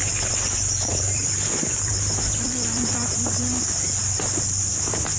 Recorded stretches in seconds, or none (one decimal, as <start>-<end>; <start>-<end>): 0.0-0.9; 4.0-5.2